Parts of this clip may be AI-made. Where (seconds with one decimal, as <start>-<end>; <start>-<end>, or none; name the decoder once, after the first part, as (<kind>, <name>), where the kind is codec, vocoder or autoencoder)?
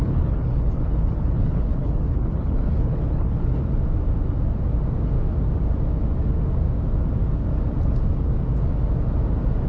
0.0-3.6 (codec, HILCodec)